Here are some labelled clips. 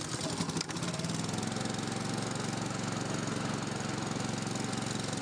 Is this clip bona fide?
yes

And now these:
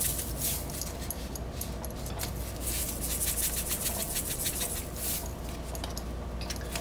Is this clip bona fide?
yes